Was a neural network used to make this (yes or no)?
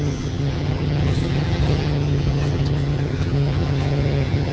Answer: yes